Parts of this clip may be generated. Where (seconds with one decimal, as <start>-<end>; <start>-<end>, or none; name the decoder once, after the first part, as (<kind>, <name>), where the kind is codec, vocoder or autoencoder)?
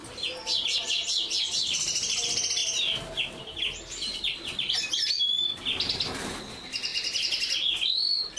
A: none